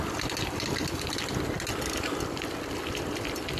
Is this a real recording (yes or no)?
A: yes